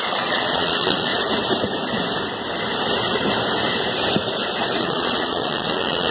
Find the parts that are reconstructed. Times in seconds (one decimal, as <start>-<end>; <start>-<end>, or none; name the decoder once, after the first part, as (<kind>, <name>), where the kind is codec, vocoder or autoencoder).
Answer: 0.0-1.1 (vocoder, Vocos); 4.8-6.1